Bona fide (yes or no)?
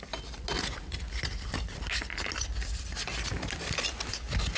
yes